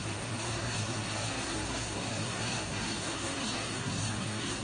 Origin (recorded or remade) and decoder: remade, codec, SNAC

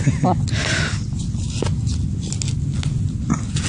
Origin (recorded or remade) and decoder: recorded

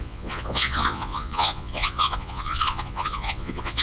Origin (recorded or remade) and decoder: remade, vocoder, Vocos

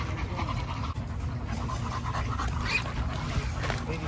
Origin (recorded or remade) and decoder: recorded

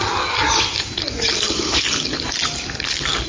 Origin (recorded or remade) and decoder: recorded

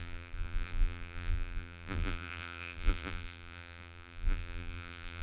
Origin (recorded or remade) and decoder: remade, vocoder, BigVGAN v2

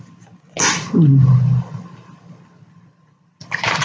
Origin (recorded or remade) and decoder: recorded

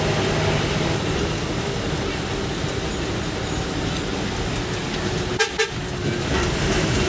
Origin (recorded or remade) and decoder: recorded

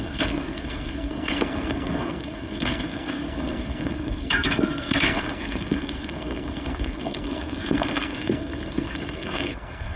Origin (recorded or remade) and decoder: remade, codec, SNAC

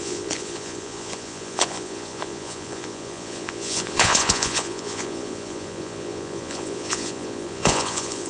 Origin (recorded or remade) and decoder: remade, vocoder, Vocos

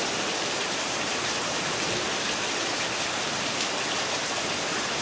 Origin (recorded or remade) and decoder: recorded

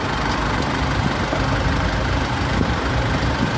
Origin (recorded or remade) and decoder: recorded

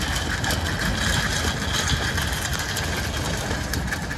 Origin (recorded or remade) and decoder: recorded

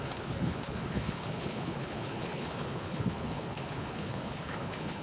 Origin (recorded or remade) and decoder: remade, codec, HILCodec